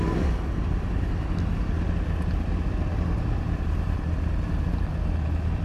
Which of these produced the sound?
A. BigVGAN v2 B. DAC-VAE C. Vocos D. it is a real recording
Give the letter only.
D